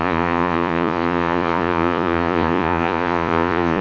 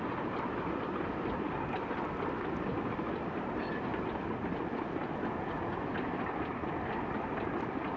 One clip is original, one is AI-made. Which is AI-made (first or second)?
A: first